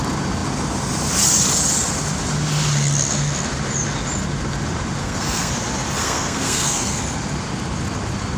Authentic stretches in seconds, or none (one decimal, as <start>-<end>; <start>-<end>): 0.0-5.0; 5.5-6.0; 7.0-8.4